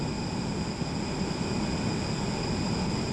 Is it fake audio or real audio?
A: real